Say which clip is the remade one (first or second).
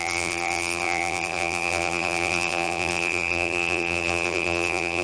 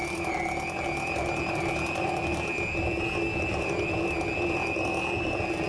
first